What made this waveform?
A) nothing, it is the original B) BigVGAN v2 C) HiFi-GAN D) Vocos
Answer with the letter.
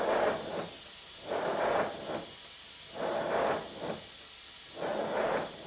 A